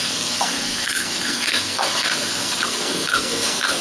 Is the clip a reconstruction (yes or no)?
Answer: yes